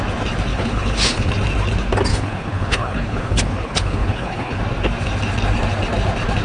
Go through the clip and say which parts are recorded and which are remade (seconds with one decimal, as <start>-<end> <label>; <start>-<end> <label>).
0.0-0.5 recorded; 0.5-1.3 remade; 1.3-2.1 recorded; 2.1-4.6 remade; 4.6-6.4 recorded